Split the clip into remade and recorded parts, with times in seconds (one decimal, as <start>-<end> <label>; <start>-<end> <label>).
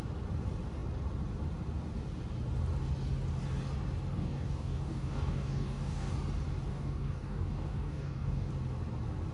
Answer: 0.0-4.1 recorded; 4.1-6.1 remade; 6.1-6.7 recorded; 6.7-8.5 remade; 8.5-9.3 recorded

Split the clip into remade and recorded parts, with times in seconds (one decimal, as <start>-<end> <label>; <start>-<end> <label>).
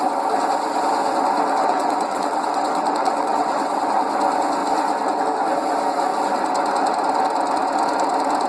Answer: 0.0-1.6 recorded; 1.6-3.7 remade; 3.7-8.5 recorded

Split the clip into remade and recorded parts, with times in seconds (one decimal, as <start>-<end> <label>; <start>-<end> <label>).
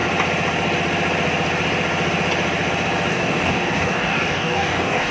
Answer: 0.0-3.1 recorded; 3.1-5.1 remade